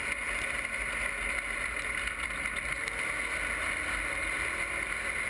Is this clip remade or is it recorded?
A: recorded